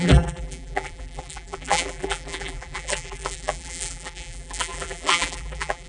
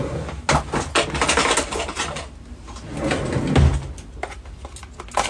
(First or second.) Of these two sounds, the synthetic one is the first